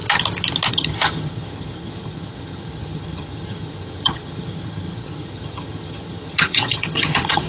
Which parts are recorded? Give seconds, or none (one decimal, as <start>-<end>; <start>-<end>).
0.0-0.7